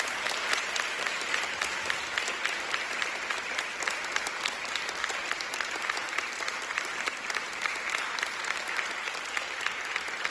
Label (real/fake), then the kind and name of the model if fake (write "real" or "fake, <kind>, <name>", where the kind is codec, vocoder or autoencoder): real